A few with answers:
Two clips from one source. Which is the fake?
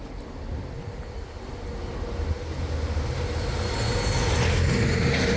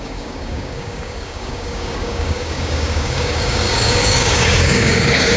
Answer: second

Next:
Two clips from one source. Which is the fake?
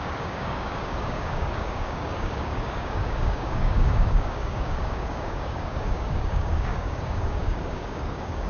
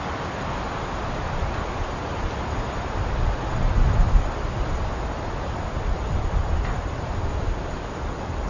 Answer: first